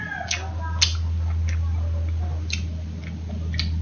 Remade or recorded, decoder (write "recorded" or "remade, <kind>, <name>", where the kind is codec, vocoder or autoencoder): recorded